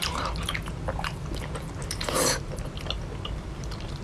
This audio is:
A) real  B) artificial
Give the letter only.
A